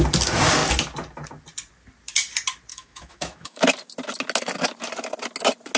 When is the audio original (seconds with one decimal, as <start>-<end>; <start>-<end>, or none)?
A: 0.0-2.7; 3.6-5.8